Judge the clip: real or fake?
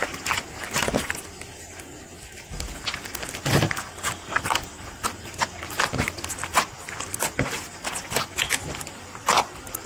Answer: real